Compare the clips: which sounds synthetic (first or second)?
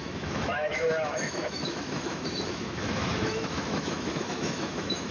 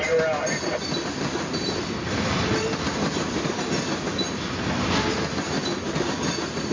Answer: first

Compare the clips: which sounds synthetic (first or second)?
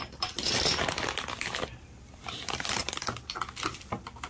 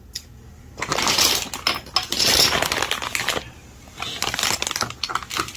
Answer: first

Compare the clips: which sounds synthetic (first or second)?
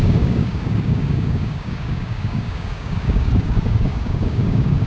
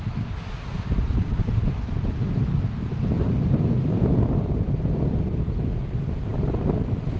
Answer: first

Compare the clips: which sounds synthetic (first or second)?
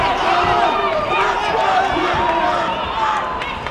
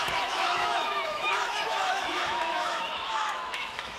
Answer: second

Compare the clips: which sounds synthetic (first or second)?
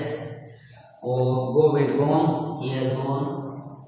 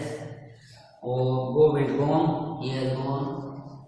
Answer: first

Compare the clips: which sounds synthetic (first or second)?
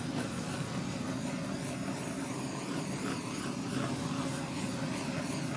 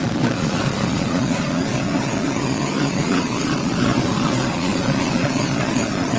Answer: second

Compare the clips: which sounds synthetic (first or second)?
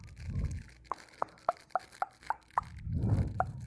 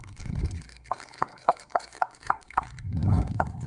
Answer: second